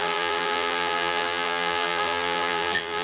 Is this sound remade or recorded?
remade